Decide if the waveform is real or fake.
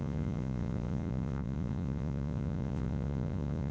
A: fake